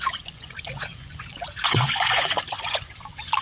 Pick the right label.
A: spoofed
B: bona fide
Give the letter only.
A